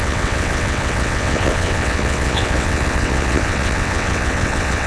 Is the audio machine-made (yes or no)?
yes